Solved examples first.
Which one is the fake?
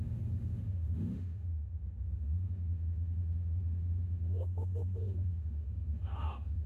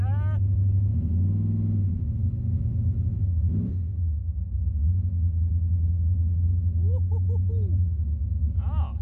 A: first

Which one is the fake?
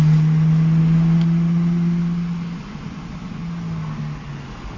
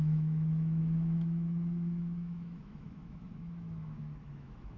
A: second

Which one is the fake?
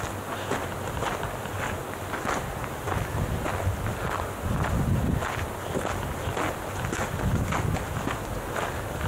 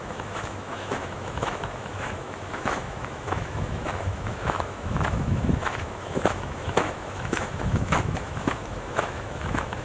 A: second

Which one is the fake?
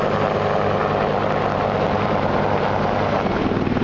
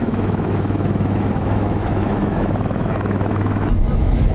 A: second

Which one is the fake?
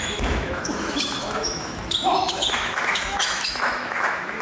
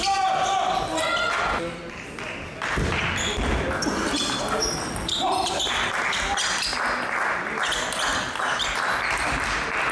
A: first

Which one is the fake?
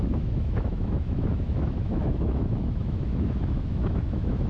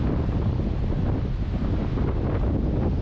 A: first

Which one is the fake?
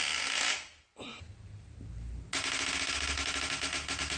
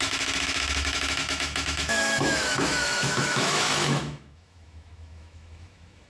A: second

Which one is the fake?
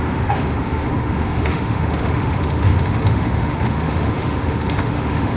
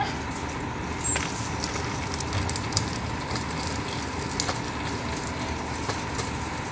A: first